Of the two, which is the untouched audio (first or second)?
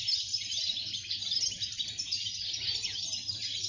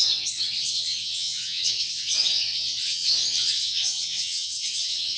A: first